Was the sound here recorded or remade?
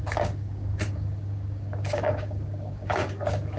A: remade